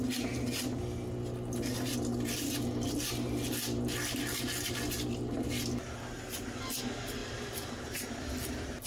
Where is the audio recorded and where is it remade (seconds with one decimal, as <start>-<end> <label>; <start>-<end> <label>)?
0.0-7.2 recorded; 7.2-8.1 remade; 8.1-8.9 recorded